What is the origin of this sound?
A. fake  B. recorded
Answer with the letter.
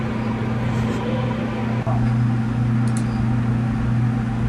B